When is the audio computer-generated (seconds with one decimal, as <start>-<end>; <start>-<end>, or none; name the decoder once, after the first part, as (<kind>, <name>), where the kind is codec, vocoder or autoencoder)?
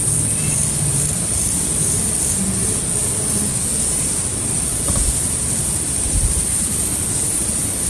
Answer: 0.9-2.2 (vocoder, BigVGAN v2); 2.6-3.4; 4.7-7.9